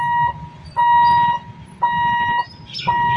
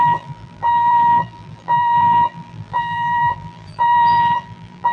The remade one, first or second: second